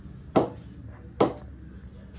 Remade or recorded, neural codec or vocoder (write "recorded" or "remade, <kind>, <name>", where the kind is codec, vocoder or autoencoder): recorded